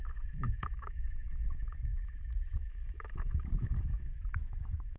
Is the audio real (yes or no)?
no